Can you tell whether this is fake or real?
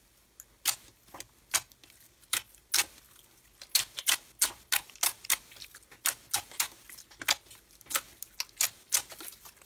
real